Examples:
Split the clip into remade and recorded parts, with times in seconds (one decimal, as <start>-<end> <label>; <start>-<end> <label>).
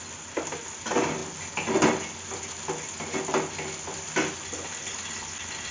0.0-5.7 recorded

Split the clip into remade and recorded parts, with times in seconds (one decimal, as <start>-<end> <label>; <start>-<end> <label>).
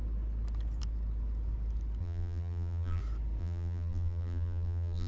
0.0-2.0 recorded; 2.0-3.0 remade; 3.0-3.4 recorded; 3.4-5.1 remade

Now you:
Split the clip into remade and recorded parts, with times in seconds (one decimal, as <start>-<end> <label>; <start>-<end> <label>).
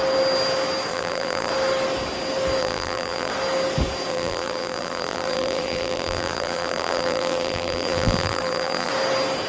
0.0-0.9 recorded; 0.9-1.5 remade; 1.5-2.6 recorded; 2.6-3.3 remade; 3.3-4.1 recorded; 4.1-8.9 remade; 8.9-9.5 recorded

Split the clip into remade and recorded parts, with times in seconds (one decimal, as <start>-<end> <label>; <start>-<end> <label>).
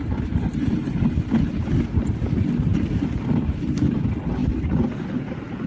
0.0-2.7 recorded; 2.7-3.4 remade; 3.4-5.7 recorded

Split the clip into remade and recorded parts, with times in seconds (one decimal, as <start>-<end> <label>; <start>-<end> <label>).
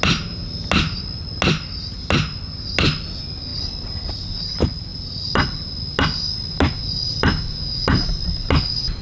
0.0-3.5 recorded; 3.5-4.1 remade; 4.1-9.0 recorded